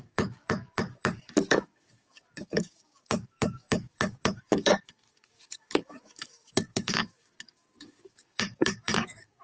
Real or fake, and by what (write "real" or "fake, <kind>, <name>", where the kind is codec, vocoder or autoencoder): fake, codec, DAC